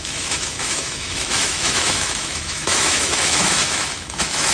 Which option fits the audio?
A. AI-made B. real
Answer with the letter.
A